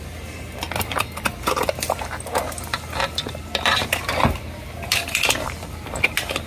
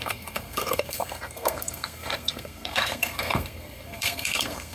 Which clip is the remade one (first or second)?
second